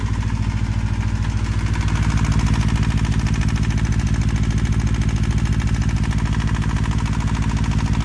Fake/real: real